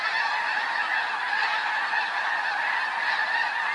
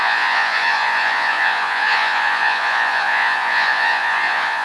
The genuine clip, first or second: first